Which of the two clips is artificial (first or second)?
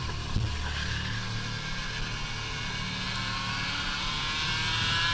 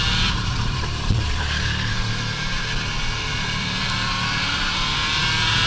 second